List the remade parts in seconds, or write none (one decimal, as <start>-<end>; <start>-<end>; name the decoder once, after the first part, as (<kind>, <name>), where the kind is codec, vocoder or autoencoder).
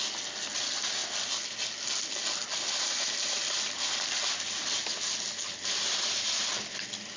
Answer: none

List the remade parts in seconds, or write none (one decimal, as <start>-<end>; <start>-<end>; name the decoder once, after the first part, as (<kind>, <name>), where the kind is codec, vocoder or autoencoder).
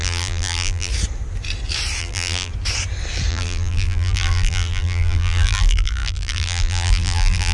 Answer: 0.0-0.9 (vocoder, BigVGAN v2); 2.0-2.5; 3.3-7.5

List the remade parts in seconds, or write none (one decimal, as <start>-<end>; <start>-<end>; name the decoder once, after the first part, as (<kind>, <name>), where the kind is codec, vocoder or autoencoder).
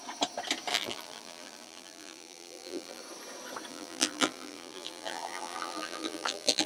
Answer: 0.7-3.0 (vocoder, BigVGAN v2); 3.7-6.7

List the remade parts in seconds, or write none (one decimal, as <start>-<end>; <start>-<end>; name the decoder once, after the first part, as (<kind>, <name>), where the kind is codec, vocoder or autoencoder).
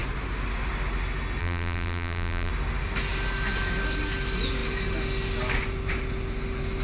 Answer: 1.4-2.5 (vocoder, BigVGAN v2)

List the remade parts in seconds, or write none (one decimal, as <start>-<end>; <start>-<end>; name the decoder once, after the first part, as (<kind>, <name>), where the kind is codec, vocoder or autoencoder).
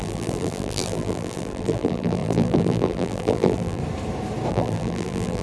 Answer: 0.0-3.8 (vocoder, BigVGAN v2); 4.5-5.4